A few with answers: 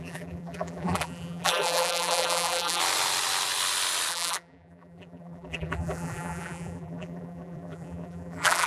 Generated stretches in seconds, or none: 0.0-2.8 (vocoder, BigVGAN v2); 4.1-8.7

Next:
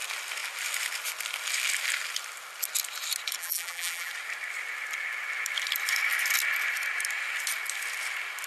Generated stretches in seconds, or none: 3.4-4.1 (vocoder, BigVGAN v2)

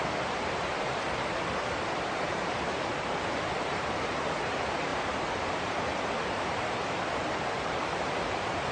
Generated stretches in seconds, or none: 0.0-2.7 (vocoder, BigVGAN v2); 3.2-8.7

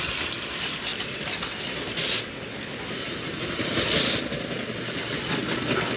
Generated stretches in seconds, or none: 0.0-0.9 (vocoder, BigVGAN v2); 3.0-6.0

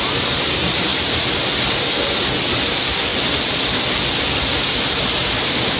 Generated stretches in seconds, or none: 0.9-2.4 (vocoder, BigVGAN v2)

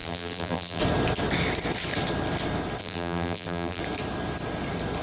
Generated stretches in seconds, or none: 0.0-0.8 (vocoder, BigVGAN v2); 2.8-3.8

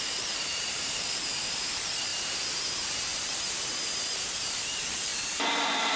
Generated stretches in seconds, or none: 0.0-2.1 (vocoder, BigVGAN v2); 4.2-5.1